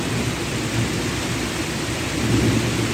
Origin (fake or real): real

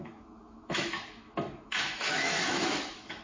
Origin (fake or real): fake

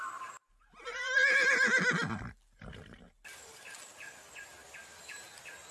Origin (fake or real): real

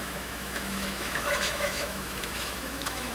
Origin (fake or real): fake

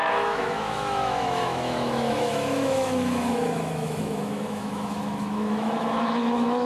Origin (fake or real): fake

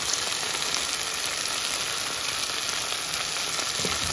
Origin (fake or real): real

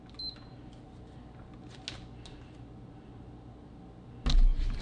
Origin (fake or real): real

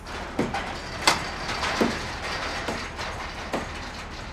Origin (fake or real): real